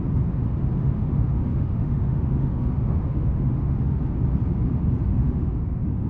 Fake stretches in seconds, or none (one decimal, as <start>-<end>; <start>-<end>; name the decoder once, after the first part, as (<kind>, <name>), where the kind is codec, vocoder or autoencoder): 0.8-4.0 (autoencoder, DAC-VAE); 5.1-6.1